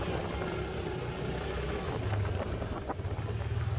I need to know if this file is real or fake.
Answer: real